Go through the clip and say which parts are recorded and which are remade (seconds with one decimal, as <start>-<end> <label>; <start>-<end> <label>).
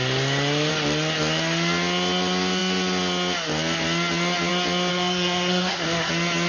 0.0-4.9 recorded; 4.9-6.1 remade; 6.1-6.5 recorded